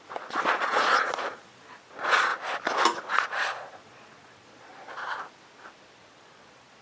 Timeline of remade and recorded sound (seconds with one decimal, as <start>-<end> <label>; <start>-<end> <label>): 0.0-2.3 remade; 2.3-3.1 recorded; 3.1-4.7 remade; 4.7-6.1 recorded; 6.1-6.8 remade